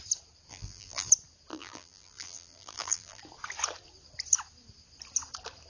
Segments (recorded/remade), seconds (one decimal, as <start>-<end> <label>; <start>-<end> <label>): 0.0-0.5 recorded; 0.5-1.1 remade; 1.1-1.5 recorded; 1.5-3.2 remade; 3.2-5.7 recorded